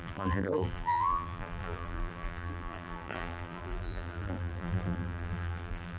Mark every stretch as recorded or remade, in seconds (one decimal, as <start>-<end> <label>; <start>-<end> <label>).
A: 0.0-6.0 remade